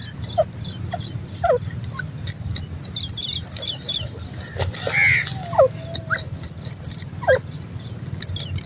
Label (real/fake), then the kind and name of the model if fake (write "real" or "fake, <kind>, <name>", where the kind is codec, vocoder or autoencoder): real